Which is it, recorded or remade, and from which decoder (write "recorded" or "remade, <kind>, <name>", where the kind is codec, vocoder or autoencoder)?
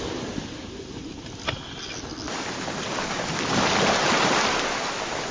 recorded